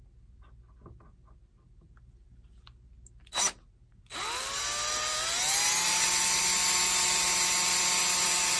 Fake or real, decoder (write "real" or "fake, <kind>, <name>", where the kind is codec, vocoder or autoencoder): real